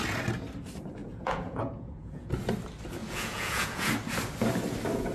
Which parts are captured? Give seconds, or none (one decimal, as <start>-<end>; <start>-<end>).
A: 0.0-1.0; 2.3-3.0; 3.9-5.1